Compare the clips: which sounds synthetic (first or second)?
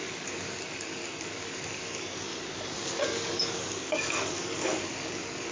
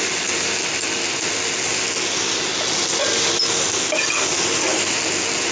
first